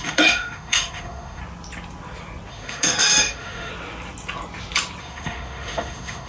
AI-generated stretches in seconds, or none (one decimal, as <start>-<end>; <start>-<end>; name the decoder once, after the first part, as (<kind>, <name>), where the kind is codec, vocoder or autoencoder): 0.0-1.4 (autoencoder, DAC-VAE); 2.5-3.7; 5.0-6.3